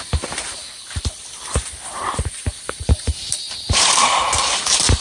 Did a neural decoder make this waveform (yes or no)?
yes